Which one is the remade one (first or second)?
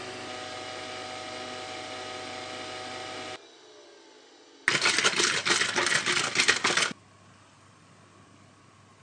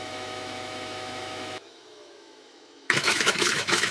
second